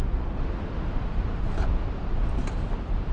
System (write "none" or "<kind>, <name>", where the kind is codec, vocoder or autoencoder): none